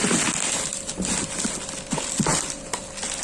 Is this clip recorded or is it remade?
recorded